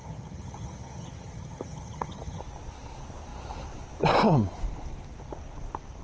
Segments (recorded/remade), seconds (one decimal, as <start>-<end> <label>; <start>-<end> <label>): 0.0-2.4 remade; 2.4-6.0 recorded